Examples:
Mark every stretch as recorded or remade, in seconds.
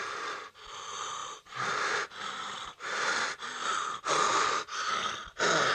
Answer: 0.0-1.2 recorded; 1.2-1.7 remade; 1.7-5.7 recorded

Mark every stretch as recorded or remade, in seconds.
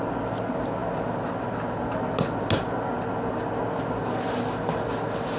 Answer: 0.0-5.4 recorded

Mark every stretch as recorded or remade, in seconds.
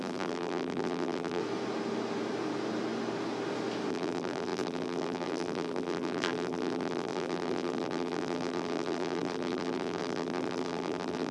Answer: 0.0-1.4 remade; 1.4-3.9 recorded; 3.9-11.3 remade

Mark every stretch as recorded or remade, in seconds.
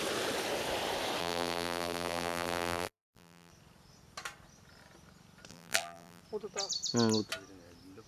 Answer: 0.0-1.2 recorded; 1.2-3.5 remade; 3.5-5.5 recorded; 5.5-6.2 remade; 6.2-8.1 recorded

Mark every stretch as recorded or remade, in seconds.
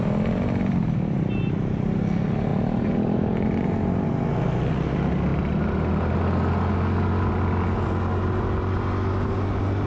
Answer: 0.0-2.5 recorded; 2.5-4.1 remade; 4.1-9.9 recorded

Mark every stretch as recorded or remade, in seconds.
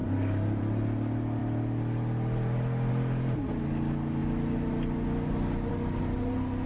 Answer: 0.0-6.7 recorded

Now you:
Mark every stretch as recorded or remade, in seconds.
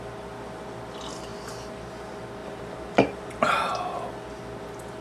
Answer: 0.0-2.4 recorded; 2.4-3.7 remade; 3.7-5.0 recorded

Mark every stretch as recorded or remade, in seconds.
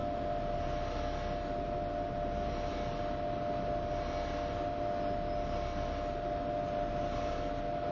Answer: 0.0-7.9 recorded